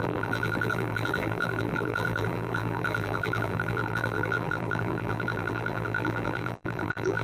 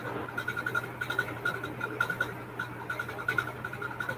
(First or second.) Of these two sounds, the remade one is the first